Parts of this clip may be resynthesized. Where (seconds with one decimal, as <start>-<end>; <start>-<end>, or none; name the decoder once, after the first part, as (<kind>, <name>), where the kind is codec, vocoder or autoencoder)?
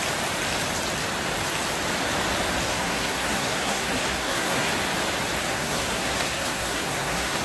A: 2.7-4.7 (codec, SNAC); 5.5-7.4